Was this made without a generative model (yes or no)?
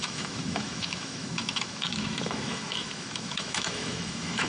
no